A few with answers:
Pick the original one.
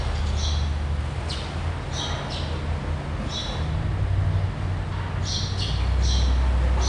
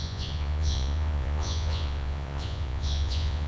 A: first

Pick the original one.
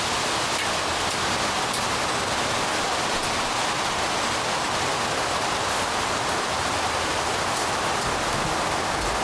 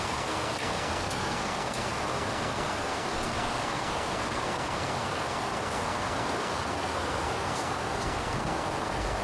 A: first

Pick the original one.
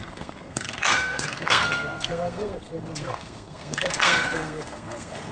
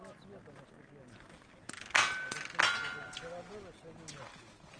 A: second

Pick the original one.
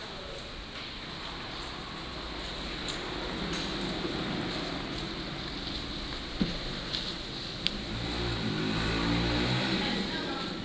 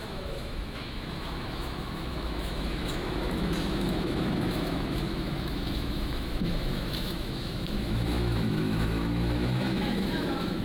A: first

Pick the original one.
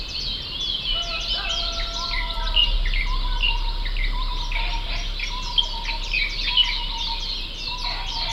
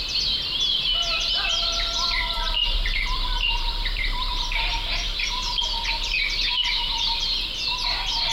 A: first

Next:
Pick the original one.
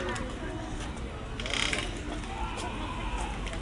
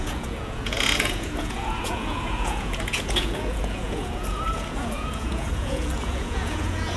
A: first